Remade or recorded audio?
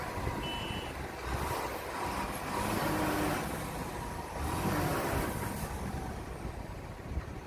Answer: recorded